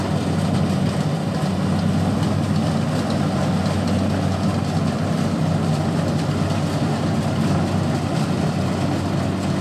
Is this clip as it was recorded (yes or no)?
yes